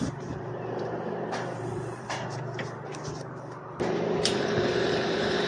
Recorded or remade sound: remade